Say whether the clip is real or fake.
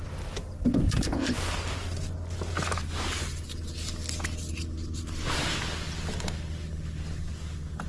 real